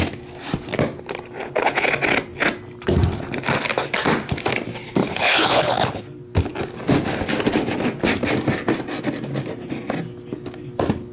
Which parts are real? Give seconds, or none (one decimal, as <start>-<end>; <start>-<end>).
0.0-1.4; 1.9-5.0; 6.0-11.1